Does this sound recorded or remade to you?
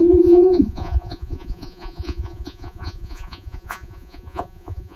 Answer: remade